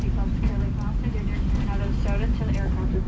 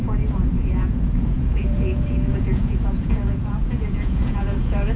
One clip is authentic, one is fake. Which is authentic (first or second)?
first